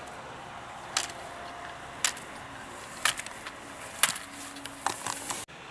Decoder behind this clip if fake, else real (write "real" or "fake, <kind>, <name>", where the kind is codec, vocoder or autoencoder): real